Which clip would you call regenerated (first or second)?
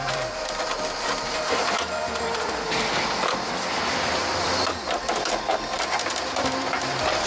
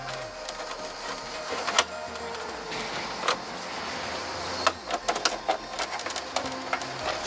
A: first